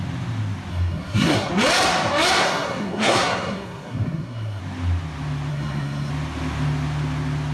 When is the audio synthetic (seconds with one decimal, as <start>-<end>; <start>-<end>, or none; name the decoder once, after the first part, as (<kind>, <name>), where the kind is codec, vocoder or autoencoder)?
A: 0.7-1.5 (codec, SNAC); 2.4-4.6; 5.5-6.1